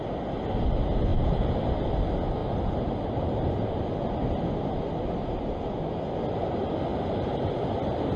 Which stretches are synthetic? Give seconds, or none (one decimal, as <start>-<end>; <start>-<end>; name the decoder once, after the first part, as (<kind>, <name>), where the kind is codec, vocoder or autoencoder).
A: 1.1-2.0 (vocoder, BigVGAN v2); 2.4-3.8; 6.9-7.5